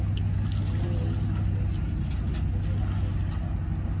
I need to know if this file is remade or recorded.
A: recorded